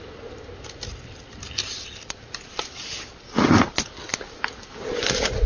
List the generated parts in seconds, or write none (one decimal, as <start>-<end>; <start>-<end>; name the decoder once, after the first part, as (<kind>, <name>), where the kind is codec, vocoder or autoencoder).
none